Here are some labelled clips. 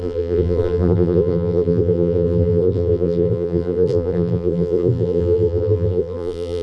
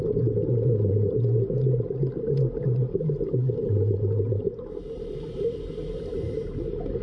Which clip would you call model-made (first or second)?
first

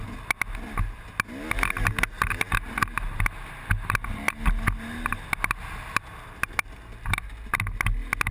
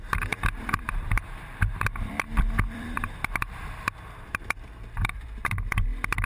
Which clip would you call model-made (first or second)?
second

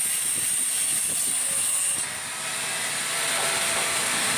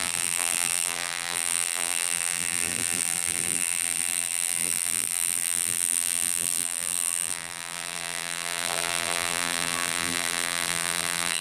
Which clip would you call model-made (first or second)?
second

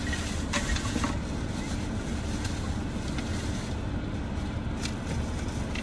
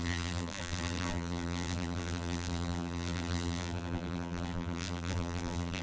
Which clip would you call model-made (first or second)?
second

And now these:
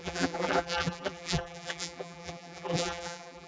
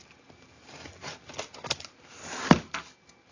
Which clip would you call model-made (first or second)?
first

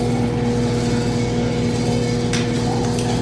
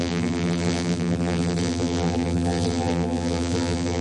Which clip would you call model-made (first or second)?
second